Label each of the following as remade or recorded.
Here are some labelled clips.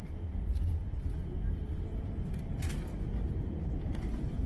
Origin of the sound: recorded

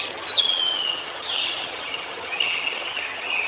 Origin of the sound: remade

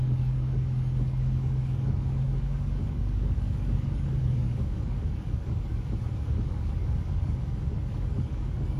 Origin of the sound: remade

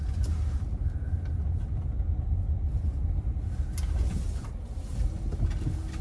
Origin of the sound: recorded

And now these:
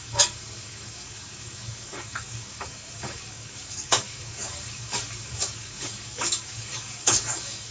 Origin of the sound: remade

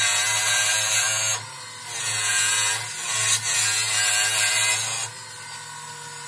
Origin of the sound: recorded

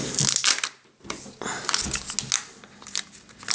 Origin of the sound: recorded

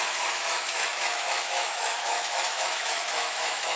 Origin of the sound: remade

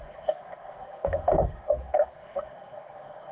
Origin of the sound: remade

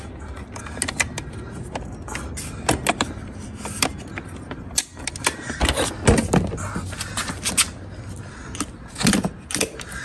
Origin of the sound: recorded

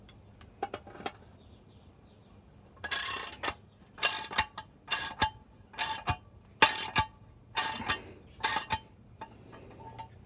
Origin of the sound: recorded